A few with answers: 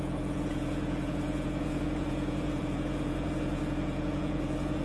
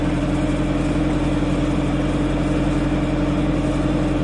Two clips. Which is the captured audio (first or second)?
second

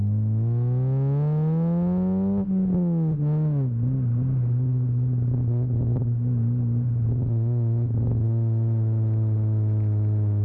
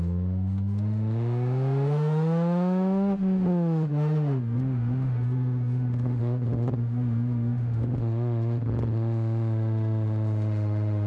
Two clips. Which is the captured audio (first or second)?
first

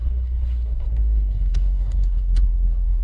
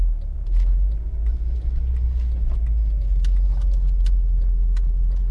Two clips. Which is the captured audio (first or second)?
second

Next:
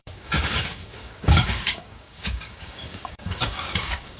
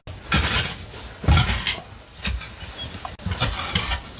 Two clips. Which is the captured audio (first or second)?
second